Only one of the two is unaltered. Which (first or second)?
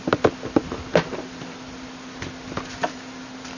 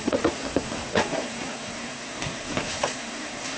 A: first